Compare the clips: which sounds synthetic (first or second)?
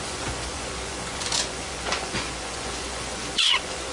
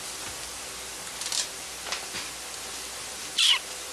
first